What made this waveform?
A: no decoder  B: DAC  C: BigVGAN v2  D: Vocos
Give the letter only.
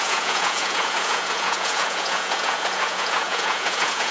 D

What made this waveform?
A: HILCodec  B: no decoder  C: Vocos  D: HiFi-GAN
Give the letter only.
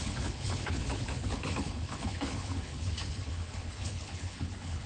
A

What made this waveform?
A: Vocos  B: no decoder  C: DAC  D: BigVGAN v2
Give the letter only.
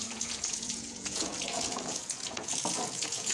A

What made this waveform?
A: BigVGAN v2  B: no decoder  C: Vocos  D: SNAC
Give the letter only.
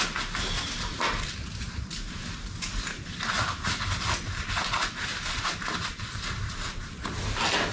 B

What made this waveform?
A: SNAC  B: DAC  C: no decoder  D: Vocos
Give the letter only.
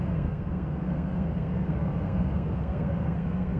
A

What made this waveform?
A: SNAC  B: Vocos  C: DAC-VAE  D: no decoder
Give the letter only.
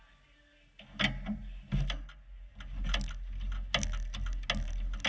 D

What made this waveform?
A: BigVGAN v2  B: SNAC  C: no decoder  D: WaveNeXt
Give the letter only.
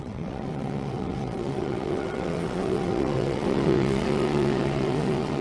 D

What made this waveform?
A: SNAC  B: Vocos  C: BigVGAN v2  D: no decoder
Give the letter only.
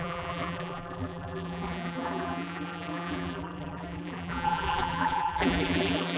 C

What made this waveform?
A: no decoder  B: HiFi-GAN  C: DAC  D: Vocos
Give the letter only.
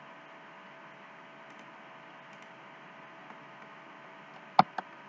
A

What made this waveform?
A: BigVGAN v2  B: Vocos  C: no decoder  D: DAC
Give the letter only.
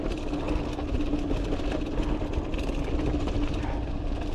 C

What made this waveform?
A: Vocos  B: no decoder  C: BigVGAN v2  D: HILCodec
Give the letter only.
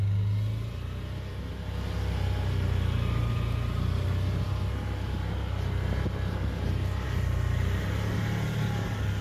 B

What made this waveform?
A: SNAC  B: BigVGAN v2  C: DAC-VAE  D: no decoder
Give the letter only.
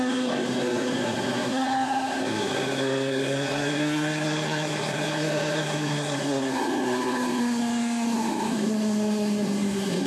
A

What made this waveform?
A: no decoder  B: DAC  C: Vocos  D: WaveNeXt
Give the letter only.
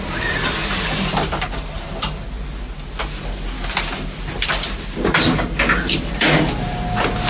A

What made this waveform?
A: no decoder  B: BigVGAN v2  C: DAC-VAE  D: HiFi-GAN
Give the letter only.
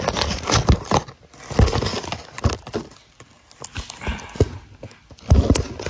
A